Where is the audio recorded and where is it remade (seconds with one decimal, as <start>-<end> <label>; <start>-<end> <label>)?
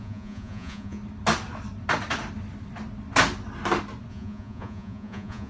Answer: 0.0-1.0 remade; 1.0-4.1 recorded; 4.1-5.5 remade